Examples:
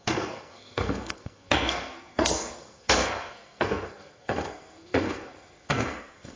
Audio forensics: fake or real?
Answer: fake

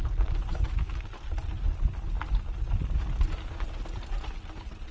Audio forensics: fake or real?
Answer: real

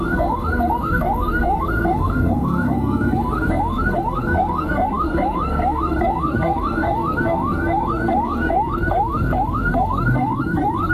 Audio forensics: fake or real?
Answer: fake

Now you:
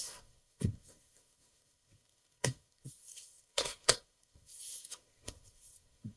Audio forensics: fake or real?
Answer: fake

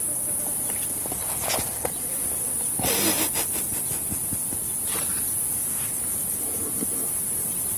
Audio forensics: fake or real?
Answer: real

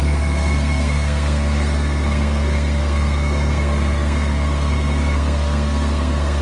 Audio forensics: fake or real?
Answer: fake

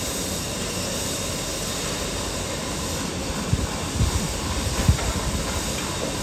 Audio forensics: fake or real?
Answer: real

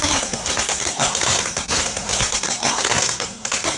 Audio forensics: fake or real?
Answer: fake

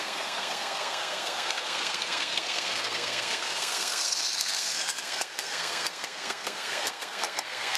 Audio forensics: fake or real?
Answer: fake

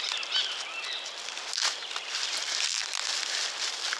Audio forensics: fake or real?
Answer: real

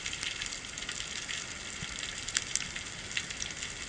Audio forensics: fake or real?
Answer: real